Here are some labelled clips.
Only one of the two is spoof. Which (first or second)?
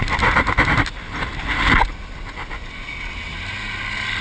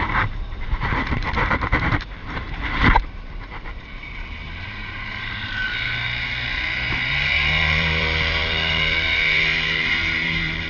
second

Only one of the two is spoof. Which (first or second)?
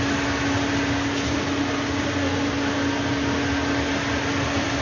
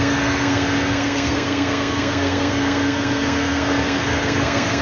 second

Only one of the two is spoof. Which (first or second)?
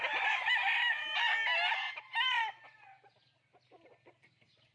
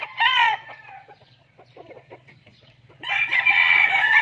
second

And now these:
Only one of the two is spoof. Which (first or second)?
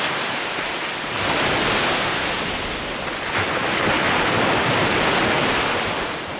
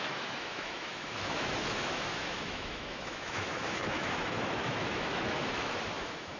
second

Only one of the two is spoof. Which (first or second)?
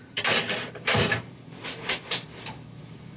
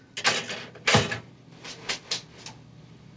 first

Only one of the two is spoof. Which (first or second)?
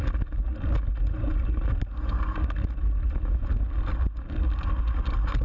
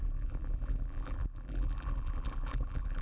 second